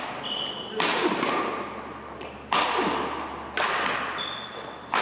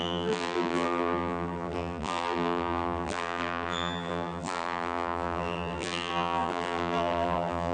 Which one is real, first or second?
first